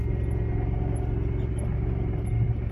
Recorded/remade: recorded